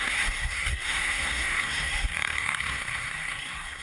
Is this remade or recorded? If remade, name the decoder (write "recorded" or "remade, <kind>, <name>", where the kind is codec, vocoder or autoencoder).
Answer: remade, codec, SNAC